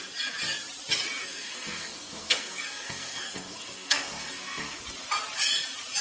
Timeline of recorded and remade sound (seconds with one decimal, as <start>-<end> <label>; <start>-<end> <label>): 0.0-1.2 recorded; 1.2-4.8 remade; 4.8-6.0 recorded